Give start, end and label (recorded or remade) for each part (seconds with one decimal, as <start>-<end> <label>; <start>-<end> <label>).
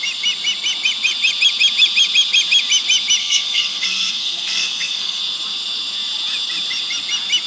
0.0-3.2 recorded; 3.2-5.2 remade; 5.2-7.5 recorded